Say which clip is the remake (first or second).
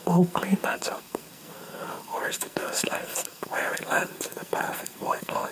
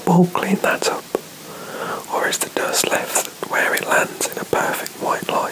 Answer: first